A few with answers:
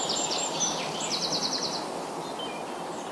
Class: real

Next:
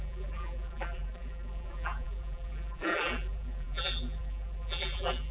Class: fake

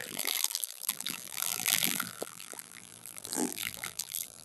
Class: fake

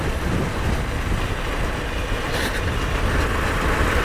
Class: real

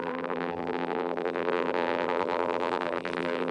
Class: fake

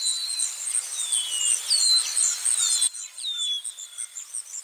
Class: real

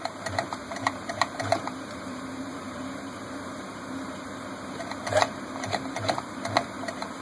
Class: fake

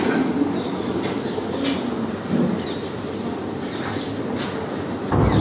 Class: real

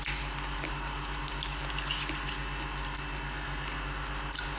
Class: real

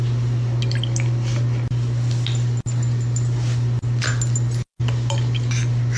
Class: real